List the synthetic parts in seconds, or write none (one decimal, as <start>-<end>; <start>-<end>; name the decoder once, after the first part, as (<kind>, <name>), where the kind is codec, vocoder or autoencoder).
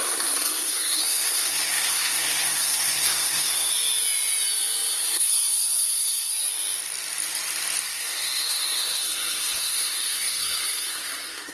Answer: 0.0-3.7 (codec, SNAC); 4.9-6.3; 7.8-11.5